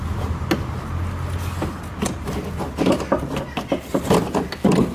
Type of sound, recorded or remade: recorded